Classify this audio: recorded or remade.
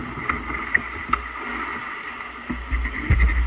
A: recorded